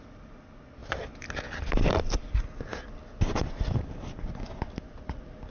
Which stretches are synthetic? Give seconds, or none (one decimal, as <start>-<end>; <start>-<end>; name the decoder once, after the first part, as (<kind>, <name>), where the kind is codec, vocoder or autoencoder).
none